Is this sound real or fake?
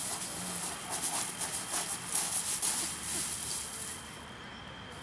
real